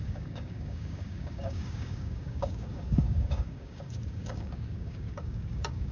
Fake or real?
fake